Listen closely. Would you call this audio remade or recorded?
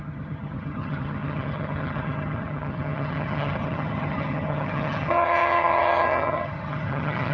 remade